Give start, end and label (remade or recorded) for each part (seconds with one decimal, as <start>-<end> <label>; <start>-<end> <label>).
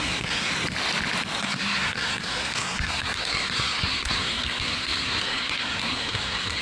0.0-0.5 remade; 0.5-1.4 recorded; 1.4-6.6 remade